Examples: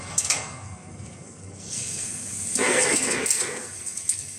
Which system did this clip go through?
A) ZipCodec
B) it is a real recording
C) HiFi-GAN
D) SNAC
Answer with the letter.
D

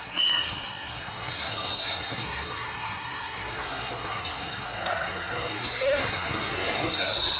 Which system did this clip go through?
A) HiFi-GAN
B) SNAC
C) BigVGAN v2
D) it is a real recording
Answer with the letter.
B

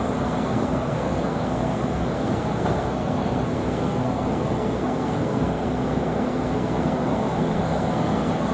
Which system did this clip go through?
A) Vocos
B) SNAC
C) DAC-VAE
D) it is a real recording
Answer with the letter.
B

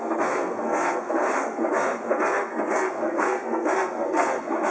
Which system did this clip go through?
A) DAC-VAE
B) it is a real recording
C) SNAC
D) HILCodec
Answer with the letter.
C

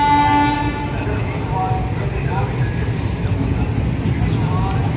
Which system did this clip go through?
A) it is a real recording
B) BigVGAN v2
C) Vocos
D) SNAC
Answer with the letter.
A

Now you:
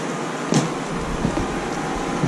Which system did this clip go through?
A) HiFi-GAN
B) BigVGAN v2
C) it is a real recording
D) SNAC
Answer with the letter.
C